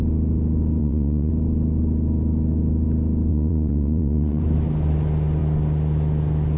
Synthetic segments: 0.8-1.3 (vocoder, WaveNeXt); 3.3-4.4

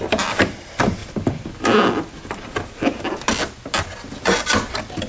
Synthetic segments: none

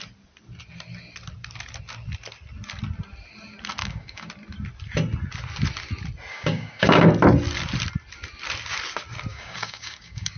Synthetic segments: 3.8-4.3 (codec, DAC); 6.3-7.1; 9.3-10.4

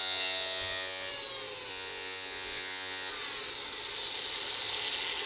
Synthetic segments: 0.0-1.1 (vocoder, Vocos); 1.7-3.1

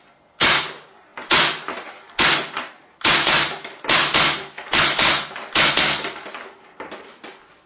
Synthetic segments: none

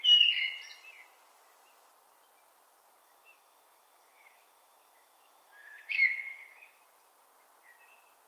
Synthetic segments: 3.0-6.8 (autoencoder, DAC-VAE)